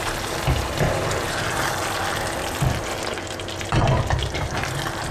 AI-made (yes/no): no